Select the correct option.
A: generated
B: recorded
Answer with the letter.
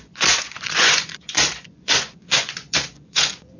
A